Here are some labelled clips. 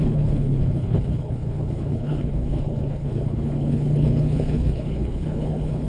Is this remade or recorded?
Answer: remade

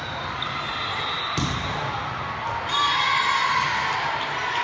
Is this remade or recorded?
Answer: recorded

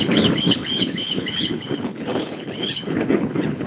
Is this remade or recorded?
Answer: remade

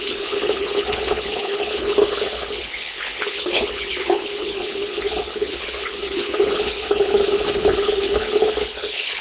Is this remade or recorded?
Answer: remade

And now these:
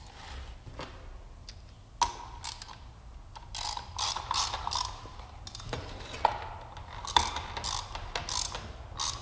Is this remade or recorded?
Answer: recorded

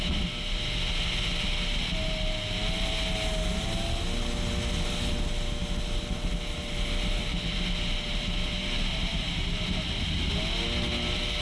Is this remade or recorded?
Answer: recorded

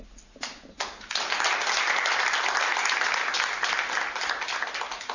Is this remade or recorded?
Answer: recorded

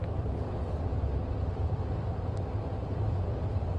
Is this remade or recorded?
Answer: recorded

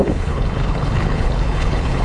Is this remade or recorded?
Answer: remade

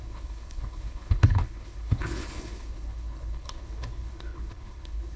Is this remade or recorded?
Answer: remade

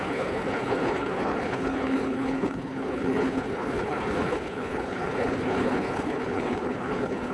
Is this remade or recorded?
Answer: remade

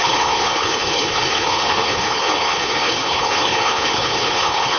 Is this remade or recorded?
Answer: remade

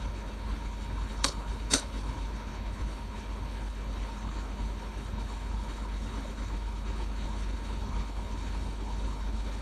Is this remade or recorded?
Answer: remade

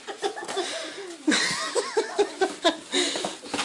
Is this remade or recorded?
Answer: recorded